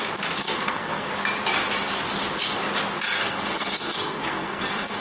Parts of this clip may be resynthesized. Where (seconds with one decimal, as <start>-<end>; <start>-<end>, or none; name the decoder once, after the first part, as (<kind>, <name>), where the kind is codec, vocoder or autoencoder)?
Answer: 0.4-1.1 (codec, SNAC); 3.2-5.0